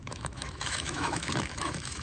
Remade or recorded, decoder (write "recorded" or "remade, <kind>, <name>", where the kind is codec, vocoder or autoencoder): remade, autoencoder, DAC-VAE